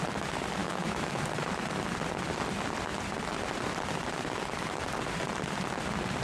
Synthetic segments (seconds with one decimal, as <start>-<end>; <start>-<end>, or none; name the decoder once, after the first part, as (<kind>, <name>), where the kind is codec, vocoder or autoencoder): 0.6-1.2 (autoencoder, DAC-VAE)